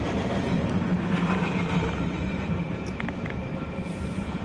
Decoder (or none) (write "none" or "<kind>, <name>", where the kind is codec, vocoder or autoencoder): vocoder, BigVGAN v2